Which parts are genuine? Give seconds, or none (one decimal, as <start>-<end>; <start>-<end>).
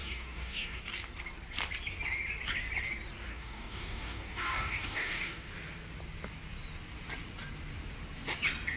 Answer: 0.8-3.3; 5.5-8.8